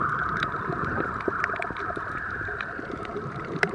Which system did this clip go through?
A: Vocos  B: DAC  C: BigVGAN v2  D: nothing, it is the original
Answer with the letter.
C